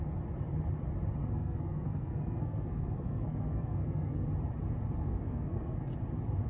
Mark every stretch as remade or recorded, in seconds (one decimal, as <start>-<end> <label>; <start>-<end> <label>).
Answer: 0.0-1.2 recorded; 1.2-4.3 remade; 4.3-5.0 recorded; 5.0-5.9 remade; 5.9-6.5 recorded